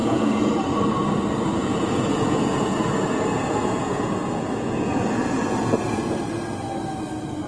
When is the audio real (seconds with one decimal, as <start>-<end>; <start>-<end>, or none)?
0.5-1.6; 6.1-7.5